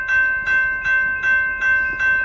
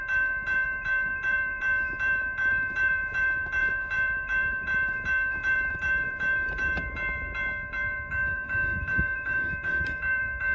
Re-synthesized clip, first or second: second